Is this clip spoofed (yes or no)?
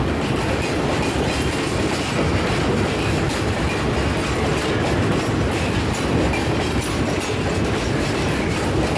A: no